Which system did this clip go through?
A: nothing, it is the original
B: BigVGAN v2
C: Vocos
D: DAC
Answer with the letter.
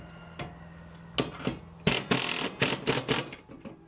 A